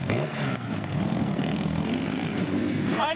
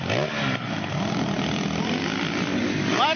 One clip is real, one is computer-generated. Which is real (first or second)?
second